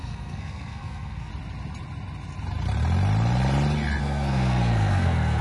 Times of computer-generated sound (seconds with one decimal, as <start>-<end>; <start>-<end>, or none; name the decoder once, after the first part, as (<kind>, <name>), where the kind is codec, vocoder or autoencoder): 0.0-1.3 (codec, SNAC); 4.0-5.4